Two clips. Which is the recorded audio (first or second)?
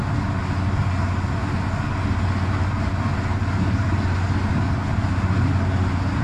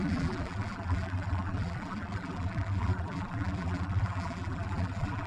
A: first